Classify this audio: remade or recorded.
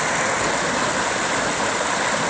recorded